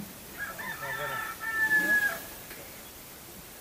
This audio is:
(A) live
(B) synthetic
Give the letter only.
A